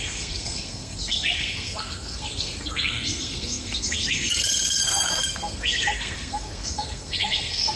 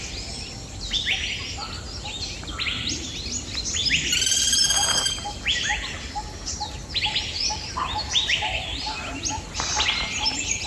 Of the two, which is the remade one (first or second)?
first